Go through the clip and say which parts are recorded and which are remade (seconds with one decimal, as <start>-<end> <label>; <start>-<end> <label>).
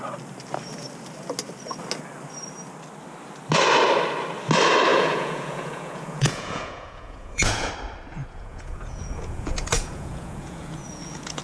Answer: 0.0-4.9 recorded; 4.9-7.7 remade; 7.7-8.2 recorded; 8.2-11.4 remade